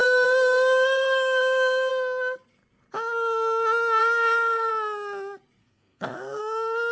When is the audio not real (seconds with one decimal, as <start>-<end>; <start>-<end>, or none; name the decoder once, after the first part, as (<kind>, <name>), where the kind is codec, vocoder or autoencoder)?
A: 0.0-1.9 (codec, SNAC); 4.0-4.7; 5.6-6.4